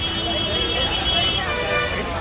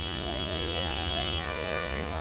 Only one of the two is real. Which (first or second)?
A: first